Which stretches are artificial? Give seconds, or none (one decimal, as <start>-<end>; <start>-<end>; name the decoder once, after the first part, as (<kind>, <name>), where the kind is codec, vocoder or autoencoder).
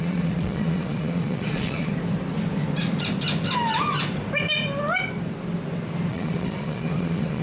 0.0-1.9 (vocoder, Vocos); 6.1-7.4